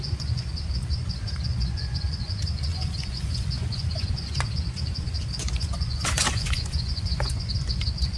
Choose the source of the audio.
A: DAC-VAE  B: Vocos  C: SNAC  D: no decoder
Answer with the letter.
B